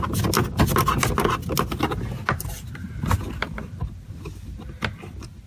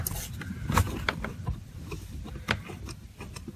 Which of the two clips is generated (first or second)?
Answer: second